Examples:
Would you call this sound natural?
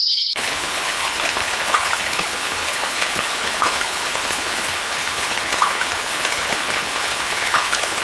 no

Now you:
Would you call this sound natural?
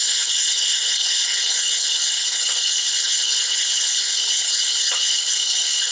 no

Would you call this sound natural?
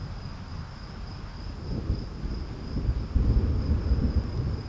yes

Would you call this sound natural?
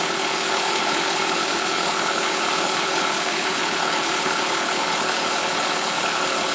no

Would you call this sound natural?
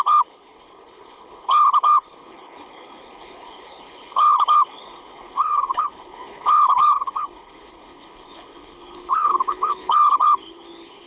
no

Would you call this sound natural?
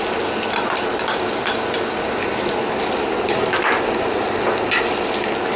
yes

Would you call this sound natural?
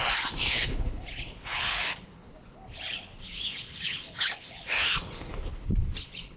no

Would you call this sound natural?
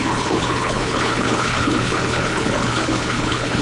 no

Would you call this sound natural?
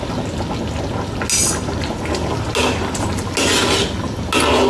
yes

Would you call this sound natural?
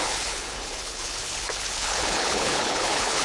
no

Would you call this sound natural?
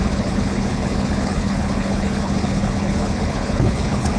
no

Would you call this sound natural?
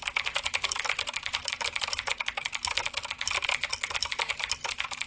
yes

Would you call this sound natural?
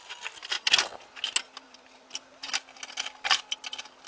yes